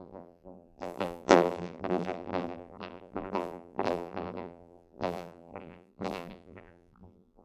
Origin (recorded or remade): remade